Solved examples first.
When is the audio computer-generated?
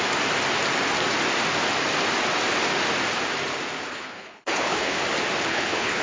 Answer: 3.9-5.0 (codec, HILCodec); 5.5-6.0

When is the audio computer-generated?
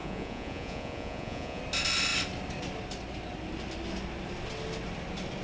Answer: 0.0-1.6 (vocoder, Vocos)